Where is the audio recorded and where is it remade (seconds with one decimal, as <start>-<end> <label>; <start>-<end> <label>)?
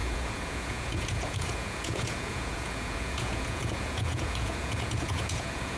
0.0-5.8 remade